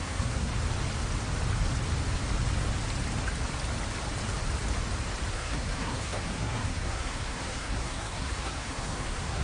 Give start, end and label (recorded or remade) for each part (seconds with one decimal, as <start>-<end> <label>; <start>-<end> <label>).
0.0-0.5 remade; 0.5-5.3 recorded; 5.3-9.4 remade